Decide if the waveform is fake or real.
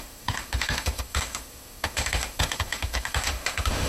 fake